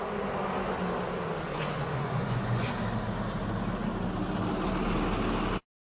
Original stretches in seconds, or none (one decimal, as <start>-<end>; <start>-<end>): 0.0-1.5; 2.7-5.9